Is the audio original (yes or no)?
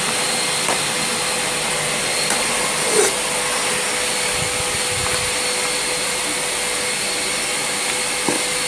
yes